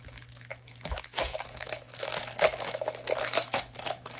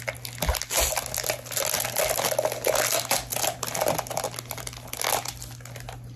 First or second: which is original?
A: second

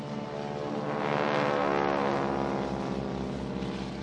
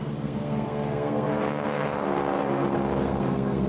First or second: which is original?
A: first